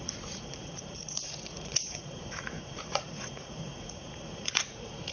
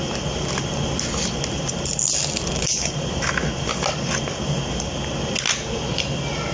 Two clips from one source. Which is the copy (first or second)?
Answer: first